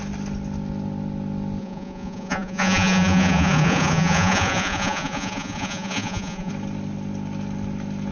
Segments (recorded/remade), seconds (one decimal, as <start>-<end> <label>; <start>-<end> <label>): 0.0-1.6 recorded; 1.6-6.5 remade; 6.5-8.1 recorded